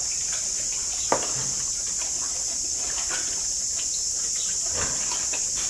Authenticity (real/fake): real